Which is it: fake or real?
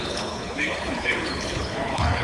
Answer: fake